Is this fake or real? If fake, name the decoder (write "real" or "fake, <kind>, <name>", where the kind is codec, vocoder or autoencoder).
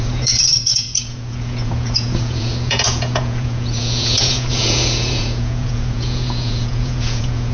fake, vocoder, Vocos